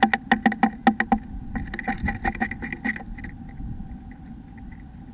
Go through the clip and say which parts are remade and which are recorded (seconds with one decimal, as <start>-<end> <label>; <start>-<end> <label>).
0.0-5.1 recorded

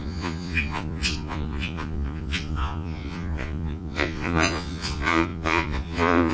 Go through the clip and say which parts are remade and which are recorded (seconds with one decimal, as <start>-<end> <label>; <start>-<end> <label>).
0.0-6.3 remade

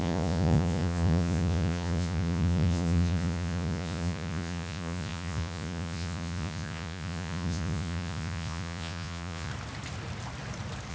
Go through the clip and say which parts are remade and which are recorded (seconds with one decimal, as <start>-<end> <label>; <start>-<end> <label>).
0.0-9.5 remade; 9.5-10.9 recorded

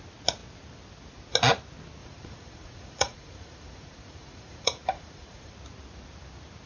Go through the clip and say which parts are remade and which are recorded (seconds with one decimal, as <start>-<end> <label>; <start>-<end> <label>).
0.0-2.0 recorded; 2.0-5.5 remade; 5.5-6.7 recorded